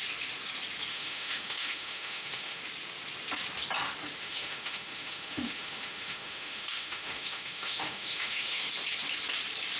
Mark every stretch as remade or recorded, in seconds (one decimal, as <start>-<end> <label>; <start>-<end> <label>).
0.0-0.9 recorded; 0.9-2.6 remade; 2.6-4.2 recorded; 4.2-8.6 remade; 8.6-9.8 recorded